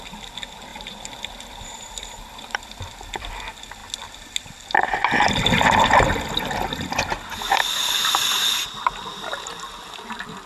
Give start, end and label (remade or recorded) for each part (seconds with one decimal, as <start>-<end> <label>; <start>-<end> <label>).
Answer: 0.0-0.7 recorded; 0.7-3.3 remade; 3.3-10.5 recorded